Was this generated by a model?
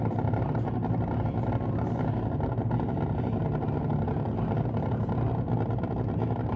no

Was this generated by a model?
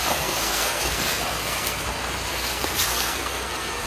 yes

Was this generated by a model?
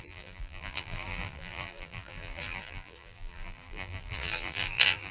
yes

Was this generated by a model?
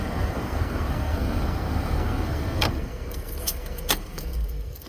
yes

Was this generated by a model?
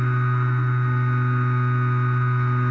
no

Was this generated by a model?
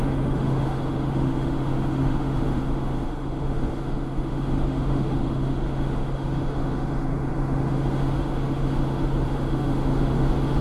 yes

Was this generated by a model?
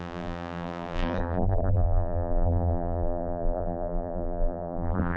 yes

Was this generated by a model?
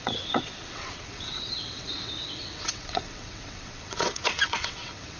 yes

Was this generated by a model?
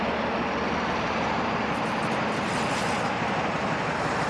no